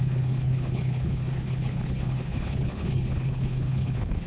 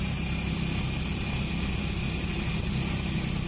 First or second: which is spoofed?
first